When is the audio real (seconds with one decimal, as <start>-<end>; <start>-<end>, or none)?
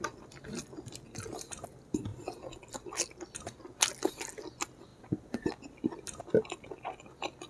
0.0-7.5